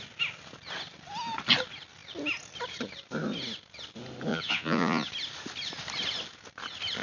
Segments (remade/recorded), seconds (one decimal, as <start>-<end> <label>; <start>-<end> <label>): 0.0-4.3 recorded; 4.3-5.1 remade; 5.1-7.0 recorded

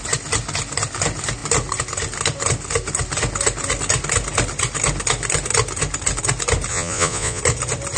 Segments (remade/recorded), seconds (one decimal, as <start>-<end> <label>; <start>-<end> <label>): 0.0-6.7 recorded; 6.7-7.4 remade; 7.4-8.0 recorded

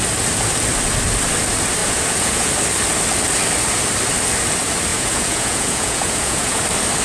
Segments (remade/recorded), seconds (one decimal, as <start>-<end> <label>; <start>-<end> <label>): 0.0-1.8 recorded; 1.8-2.5 remade; 2.5-4.9 recorded; 4.9-6.6 remade; 6.6-7.0 recorded

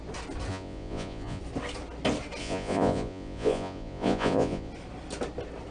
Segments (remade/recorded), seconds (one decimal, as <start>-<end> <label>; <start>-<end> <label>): 0.0-0.5 recorded; 0.5-1.4 remade; 1.4-2.4 recorded; 2.4-4.7 remade; 4.7-5.7 recorded